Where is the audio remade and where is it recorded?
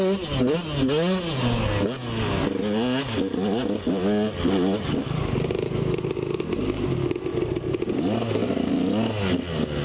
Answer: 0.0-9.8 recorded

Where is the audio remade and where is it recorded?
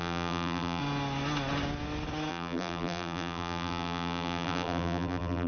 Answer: 0.0-0.8 remade; 0.8-2.3 recorded; 2.3-5.5 remade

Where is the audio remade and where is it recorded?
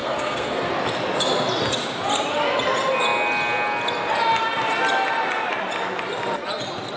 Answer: 0.0-0.7 remade; 0.7-7.0 recorded